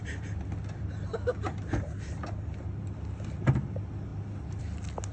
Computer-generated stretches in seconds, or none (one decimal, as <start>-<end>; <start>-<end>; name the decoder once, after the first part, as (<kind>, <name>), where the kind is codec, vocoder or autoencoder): none

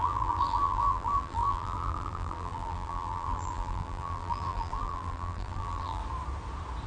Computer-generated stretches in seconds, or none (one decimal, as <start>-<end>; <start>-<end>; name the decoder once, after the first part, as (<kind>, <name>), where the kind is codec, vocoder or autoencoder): 0.0-6.0 (vocoder, BigVGAN v2)

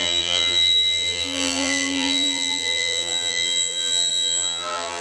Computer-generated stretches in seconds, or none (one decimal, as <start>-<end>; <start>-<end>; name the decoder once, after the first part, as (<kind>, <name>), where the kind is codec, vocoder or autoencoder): 0.0-5.0 (vocoder, BigVGAN v2)

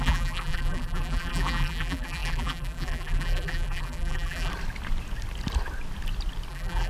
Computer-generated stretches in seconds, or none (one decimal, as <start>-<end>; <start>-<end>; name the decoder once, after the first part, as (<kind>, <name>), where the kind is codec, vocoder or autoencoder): 0.0-4.5 (vocoder, BigVGAN v2); 6.5-6.9

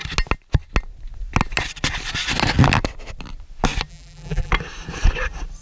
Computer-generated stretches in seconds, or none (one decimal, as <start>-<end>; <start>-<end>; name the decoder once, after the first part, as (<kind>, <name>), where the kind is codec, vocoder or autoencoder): 3.9-4.5 (vocoder, BigVGAN v2)

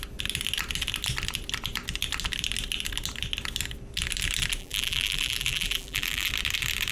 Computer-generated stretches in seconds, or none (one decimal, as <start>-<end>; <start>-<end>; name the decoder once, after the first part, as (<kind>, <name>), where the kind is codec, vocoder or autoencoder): 4.6-6.3 (vocoder, BigVGAN v2)

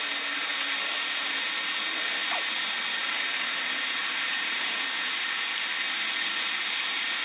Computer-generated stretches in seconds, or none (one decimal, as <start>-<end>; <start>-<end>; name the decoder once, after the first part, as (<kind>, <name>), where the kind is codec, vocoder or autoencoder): none

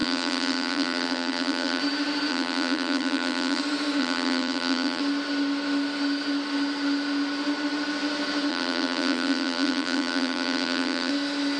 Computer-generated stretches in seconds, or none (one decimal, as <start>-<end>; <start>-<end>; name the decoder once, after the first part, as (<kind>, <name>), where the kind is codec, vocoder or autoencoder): 0.0-1.8 (vocoder, BigVGAN v2); 2.3-3.6; 4.0-5.0; 8.5-11.1